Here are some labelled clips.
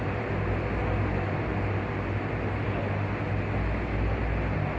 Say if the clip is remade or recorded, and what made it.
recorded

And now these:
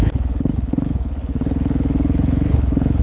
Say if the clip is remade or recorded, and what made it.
remade, codec, HILCodec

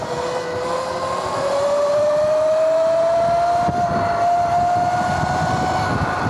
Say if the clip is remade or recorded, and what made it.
recorded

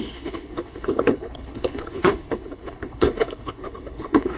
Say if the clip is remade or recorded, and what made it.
remade, codec, HILCodec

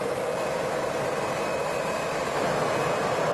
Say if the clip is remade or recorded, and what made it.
recorded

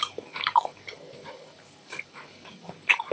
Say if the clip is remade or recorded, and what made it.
remade, codec, DAC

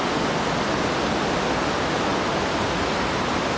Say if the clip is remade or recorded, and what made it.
recorded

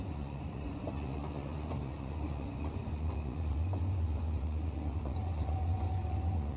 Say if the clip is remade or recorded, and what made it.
remade, vocoder, Vocos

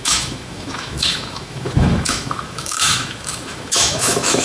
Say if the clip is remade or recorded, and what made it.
remade, autoencoder, DAC-VAE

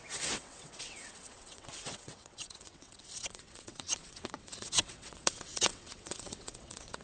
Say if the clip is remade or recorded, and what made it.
remade, vocoder, WaveNeXt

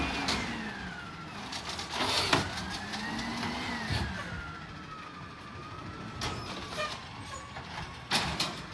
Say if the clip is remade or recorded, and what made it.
recorded